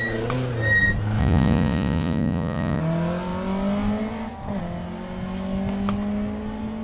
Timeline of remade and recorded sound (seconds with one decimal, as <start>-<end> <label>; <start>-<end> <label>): 0.0-1.2 recorded; 1.2-2.8 remade; 2.8-6.8 recorded